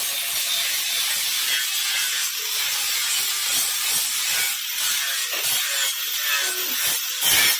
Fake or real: real